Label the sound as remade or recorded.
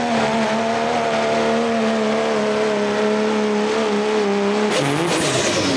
recorded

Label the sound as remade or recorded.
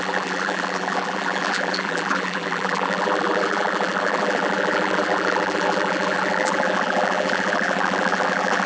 remade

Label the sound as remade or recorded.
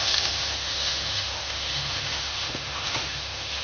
remade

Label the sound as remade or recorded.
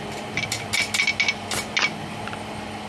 recorded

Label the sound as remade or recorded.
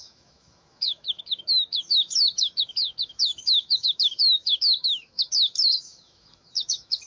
remade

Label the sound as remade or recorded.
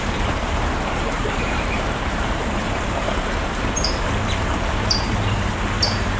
remade